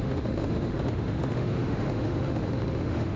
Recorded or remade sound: remade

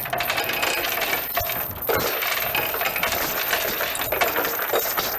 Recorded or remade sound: recorded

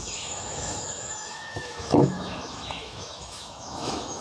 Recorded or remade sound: remade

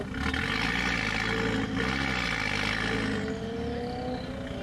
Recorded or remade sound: recorded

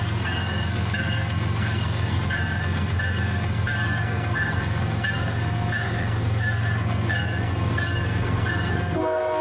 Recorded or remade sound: remade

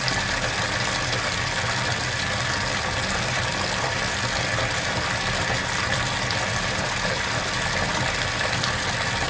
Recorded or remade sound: recorded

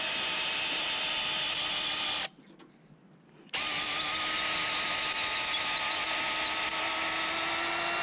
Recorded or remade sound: recorded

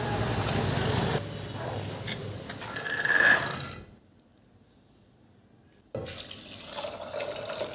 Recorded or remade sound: recorded